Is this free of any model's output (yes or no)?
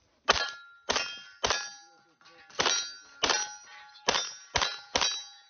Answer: yes